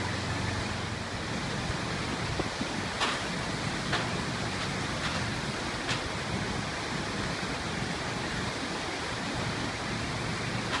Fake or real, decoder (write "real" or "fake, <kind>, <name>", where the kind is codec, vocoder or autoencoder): real